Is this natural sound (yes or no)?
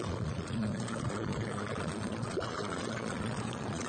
no